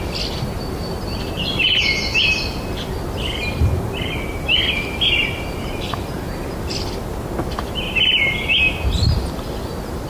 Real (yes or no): yes